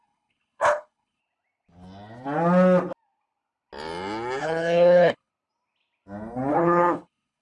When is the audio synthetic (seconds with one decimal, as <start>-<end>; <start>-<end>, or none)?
0.0-1.2; 4.4-5.3; 6.5-7.4